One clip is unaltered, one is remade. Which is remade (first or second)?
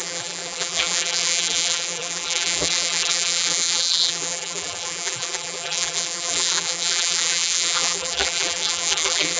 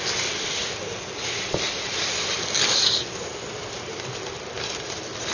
first